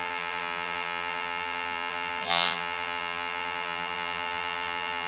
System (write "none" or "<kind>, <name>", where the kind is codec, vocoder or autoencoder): vocoder, BigVGAN v2